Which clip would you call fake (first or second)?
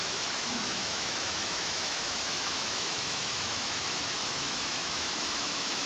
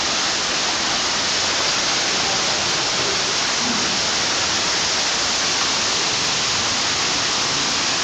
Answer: first